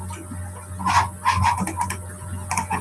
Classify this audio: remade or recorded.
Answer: recorded